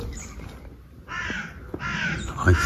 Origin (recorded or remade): recorded